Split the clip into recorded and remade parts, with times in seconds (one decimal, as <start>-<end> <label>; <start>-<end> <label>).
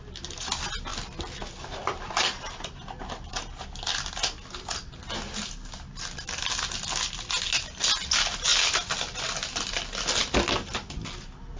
0.0-11.6 recorded